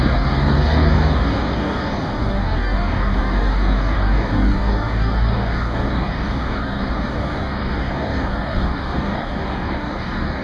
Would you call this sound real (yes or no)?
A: no